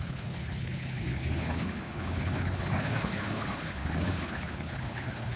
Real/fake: fake